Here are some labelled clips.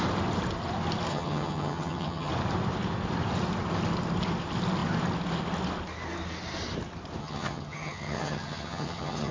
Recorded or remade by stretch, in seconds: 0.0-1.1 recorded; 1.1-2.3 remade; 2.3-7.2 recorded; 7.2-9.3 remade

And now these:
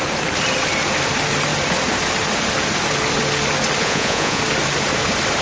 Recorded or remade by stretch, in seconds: 0.0-3.8 recorded; 3.8-4.4 remade; 4.4-5.4 recorded

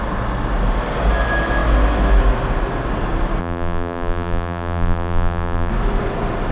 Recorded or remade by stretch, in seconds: 0.0-3.4 recorded; 3.4-5.7 remade; 5.7-6.5 recorded

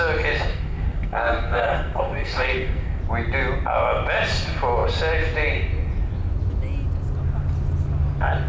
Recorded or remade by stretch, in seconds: 0.0-0.5 recorded; 0.5-3.0 remade; 3.0-8.5 recorded

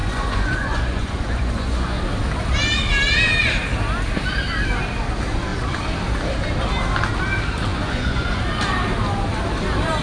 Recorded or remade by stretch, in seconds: 0.0-2.0 remade; 2.0-7.7 recorded; 7.7-8.4 remade; 8.4-10.0 recorded

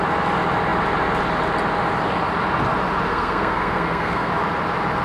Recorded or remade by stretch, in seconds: 0.0-3.1 recorded; 3.1-4.3 remade; 4.3-5.0 recorded